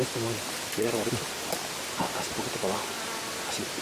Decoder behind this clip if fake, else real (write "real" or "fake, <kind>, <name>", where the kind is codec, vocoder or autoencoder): real